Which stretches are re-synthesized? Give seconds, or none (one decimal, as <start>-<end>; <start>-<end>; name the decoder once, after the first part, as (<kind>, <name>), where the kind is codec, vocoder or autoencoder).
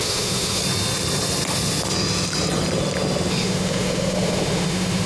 0.0-0.6 (autoencoder, DAC-VAE); 3.3-5.1